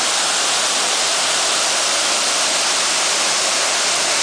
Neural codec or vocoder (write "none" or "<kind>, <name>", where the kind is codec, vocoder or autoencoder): none